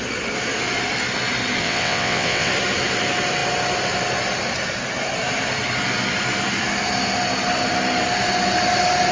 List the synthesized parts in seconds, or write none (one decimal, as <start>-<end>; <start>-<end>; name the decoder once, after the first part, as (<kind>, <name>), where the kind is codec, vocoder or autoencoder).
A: 1.6-2.5 (vocoder, WaveNeXt)